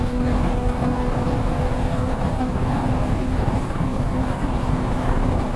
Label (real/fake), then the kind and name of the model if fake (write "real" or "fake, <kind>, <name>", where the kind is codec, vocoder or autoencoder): fake, codec, DAC